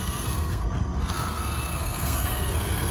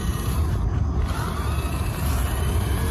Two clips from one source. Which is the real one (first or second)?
second